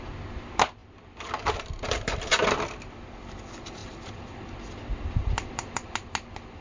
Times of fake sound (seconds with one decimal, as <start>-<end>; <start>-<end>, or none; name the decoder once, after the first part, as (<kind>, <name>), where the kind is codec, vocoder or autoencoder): none